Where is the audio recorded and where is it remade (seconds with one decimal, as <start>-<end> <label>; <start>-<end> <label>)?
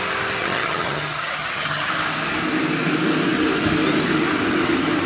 0.0-0.4 recorded; 0.4-1.9 remade; 1.9-5.1 recorded